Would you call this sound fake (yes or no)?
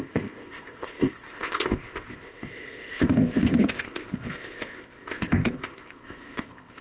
yes